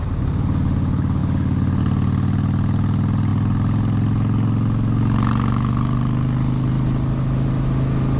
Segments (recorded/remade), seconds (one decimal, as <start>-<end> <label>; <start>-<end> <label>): 0.0-8.2 recorded